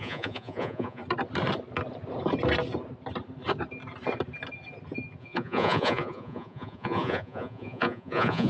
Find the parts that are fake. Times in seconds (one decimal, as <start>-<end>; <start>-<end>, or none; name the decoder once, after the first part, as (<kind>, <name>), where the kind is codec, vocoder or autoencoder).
0.0-1.0 (vocoder, Vocos); 5.2-8.5